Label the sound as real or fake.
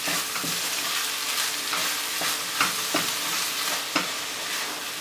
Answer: real